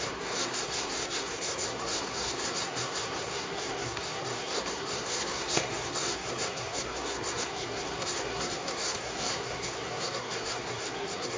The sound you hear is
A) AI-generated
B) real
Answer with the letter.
A